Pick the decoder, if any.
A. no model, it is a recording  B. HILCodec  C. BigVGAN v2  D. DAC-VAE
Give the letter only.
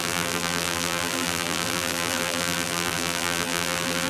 C